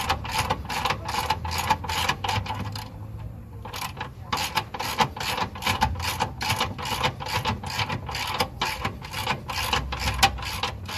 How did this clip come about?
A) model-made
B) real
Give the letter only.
B